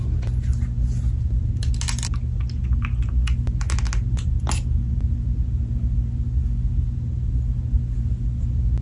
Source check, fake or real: real